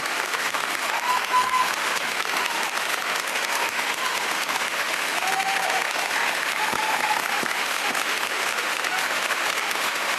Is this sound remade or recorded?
remade